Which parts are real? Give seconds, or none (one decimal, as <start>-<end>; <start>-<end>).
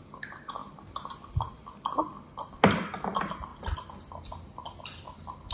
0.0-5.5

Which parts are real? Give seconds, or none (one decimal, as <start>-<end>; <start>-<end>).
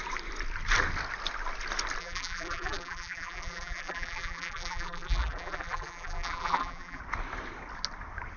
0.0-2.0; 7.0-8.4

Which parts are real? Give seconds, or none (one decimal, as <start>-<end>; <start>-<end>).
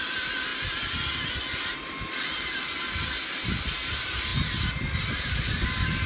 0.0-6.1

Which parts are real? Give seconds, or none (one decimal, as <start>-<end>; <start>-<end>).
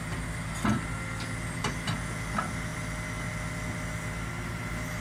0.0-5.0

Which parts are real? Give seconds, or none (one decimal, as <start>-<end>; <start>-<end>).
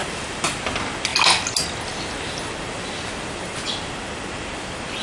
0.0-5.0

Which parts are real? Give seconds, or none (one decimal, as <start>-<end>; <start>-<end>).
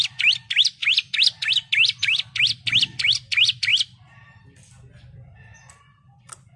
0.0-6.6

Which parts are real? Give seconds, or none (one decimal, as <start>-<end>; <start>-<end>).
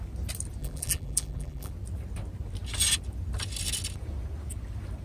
0.0-0.6; 1.7-5.0